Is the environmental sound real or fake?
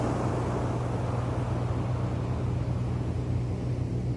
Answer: real